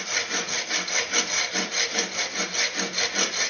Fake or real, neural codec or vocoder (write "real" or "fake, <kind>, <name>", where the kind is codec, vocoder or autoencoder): real